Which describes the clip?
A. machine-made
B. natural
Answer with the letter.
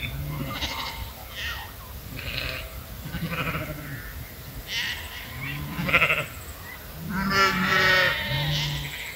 B